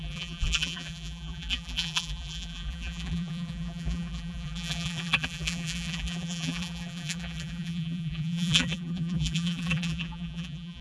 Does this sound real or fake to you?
fake